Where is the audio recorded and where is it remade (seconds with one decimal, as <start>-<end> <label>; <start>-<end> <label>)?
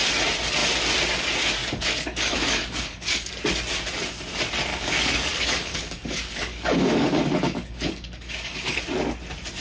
0.0-1.6 recorded; 1.6-3.3 remade; 3.3-4.7 recorded; 4.7-8.8 remade; 8.8-9.6 recorded